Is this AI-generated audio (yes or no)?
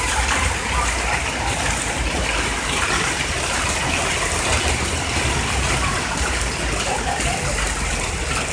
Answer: no